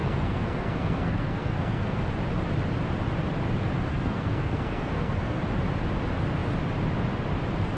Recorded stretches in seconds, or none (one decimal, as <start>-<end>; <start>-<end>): 2.0-3.9; 5.4-7.8

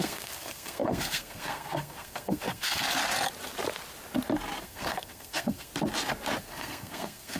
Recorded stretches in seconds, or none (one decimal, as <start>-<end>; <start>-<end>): 2.8-4.6; 5.7-6.4

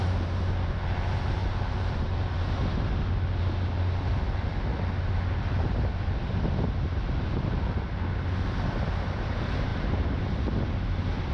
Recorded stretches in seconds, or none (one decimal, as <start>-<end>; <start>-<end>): 0.0-11.3

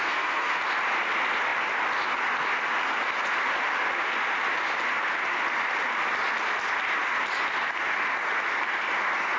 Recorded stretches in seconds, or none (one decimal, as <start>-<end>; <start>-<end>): 0.6-9.4

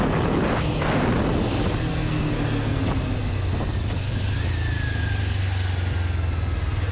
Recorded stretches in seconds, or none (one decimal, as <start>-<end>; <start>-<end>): 0.0-1.9; 2.8-6.9

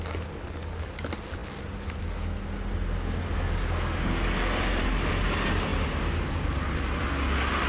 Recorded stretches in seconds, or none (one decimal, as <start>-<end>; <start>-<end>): 0.0-7.7